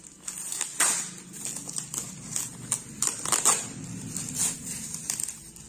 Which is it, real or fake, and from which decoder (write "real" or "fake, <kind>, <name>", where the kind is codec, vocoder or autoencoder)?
real